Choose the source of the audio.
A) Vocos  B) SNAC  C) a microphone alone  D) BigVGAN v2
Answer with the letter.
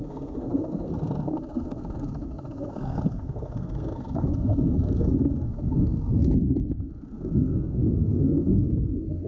B